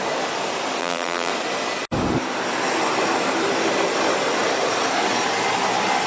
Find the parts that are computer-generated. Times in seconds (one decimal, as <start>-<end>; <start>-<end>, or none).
0.8-1.3